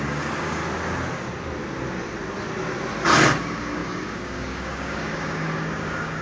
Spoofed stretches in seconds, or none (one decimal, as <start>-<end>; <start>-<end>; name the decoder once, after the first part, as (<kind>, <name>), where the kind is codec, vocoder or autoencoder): 0.0-0.6 (codec, DAC); 3.4-6.2